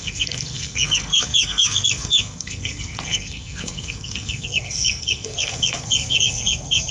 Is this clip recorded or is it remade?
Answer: remade